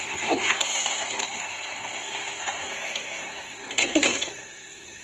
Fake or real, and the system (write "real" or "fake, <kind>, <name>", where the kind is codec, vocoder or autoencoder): fake, codec, SNAC